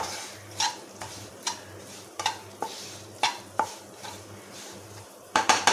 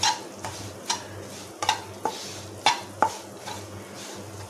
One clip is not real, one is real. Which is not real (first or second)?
first